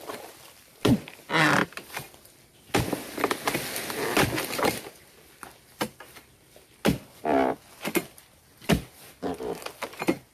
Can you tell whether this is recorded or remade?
recorded